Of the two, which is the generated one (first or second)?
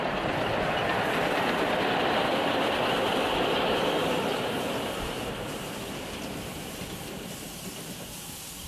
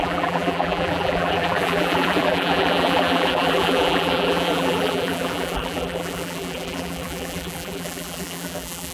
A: second